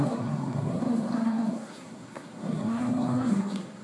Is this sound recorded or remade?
remade